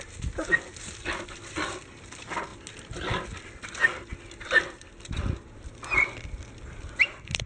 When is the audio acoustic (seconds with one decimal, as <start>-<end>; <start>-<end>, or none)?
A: 0.0-7.5